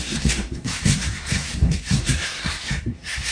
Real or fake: fake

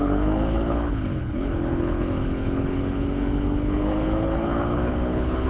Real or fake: fake